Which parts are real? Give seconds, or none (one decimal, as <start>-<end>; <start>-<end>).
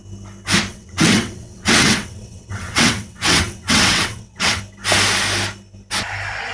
0.0-0.7; 4.6-6.5